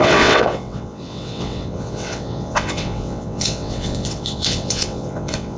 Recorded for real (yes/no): no